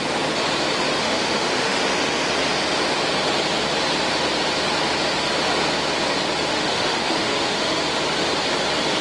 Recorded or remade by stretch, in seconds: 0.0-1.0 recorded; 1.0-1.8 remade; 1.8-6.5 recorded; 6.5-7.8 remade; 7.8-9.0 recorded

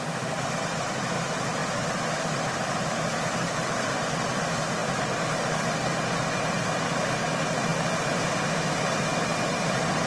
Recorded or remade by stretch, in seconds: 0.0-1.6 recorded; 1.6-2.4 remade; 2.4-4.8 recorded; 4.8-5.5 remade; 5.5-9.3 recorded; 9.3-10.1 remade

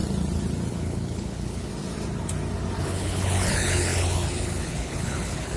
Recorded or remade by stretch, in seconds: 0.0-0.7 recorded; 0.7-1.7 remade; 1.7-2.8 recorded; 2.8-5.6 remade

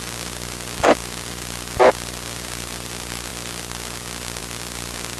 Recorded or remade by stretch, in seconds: 0.0-5.2 recorded

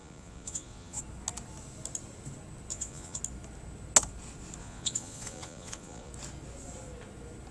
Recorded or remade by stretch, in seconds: 0.0-1.0 remade; 1.0-2.7 recorded; 2.7-3.2 remade; 3.2-4.6 recorded; 4.6-6.1 remade; 6.1-7.5 recorded

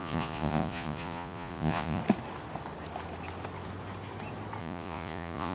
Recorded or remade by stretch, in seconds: 0.0-2.0 remade; 2.0-4.6 recorded; 4.6-5.5 remade

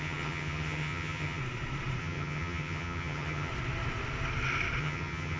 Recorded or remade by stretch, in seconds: 0.0-1.4 remade; 1.4-2.0 recorded; 2.0-3.5 remade; 3.5-4.8 recorded; 4.8-5.4 remade